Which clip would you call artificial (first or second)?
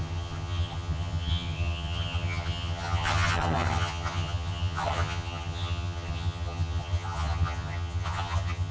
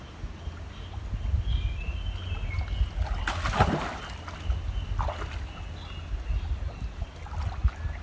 first